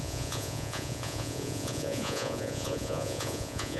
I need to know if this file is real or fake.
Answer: fake